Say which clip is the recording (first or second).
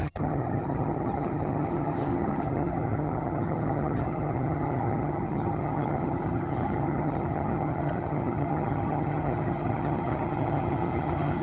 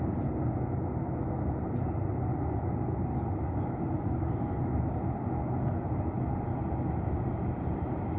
second